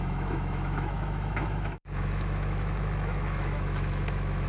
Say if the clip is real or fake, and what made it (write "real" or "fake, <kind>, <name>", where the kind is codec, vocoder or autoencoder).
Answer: fake, autoencoder, DAC-VAE